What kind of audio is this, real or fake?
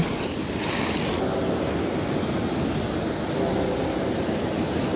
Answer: real